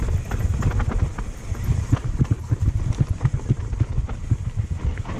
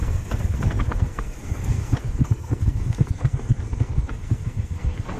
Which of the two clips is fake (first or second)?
second